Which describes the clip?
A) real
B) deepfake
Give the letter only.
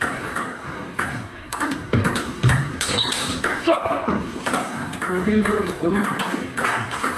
B